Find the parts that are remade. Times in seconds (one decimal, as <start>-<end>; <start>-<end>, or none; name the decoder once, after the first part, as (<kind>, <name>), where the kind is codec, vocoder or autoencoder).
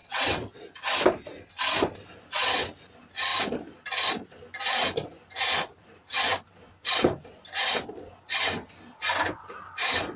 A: 0.0-0.6 (vocoder, WaveNeXt)